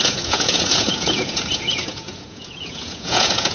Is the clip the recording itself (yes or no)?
no